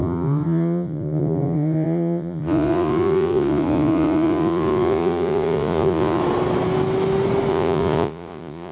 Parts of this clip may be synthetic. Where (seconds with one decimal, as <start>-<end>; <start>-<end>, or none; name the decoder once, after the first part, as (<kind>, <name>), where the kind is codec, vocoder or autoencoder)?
0.0-6.2 (vocoder, Vocos); 7.5-8.7